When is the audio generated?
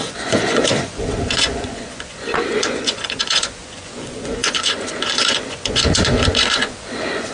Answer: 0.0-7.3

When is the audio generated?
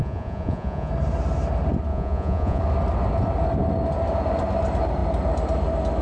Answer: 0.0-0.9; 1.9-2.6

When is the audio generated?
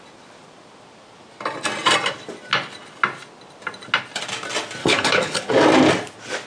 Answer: 4.8-5.5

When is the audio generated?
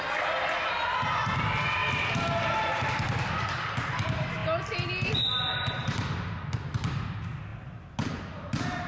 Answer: none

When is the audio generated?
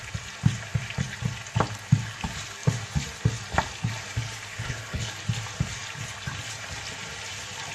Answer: 4.5-5.1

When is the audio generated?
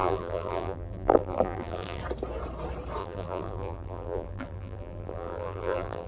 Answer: 0.0-2.0; 3.0-6.1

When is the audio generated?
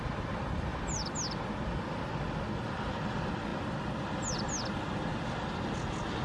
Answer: none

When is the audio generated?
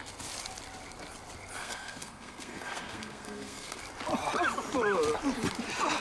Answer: 1.6-3.8